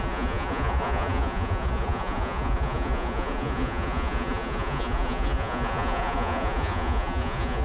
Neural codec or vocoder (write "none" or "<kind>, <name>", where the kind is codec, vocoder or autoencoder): vocoder, Vocos